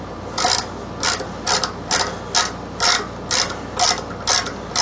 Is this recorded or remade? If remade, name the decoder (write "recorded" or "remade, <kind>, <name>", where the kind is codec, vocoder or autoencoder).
recorded